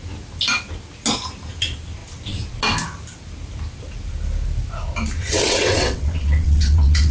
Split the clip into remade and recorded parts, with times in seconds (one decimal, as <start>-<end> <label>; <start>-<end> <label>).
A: 0.0-5.2 recorded; 5.2-7.1 remade

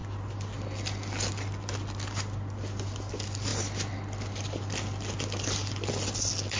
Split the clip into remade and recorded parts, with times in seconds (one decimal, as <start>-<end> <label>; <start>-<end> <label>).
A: 0.0-6.6 recorded

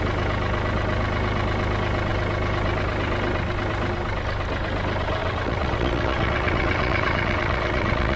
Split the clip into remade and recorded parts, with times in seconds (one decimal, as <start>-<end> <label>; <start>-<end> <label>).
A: 0.0-5.2 recorded; 5.2-8.2 remade

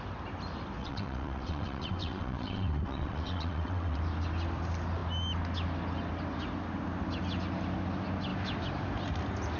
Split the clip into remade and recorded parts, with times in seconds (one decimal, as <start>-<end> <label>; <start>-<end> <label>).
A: 0.0-0.8 recorded; 0.8-4.0 remade; 4.0-9.6 recorded

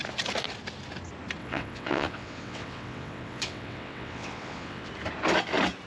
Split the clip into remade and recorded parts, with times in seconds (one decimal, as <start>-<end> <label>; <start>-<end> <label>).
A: 0.0-1.4 recorded; 1.4-4.9 remade; 4.9-5.9 recorded

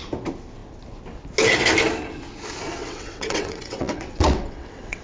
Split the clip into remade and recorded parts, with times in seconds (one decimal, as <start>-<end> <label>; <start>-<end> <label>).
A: 0.0-2.8 recorded; 2.8-5.0 remade

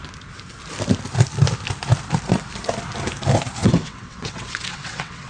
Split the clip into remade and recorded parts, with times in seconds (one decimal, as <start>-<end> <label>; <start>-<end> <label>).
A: 0.0-3.6 recorded; 3.6-5.3 remade